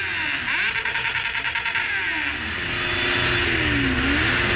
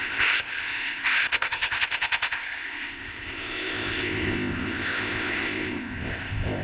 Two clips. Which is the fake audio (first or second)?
second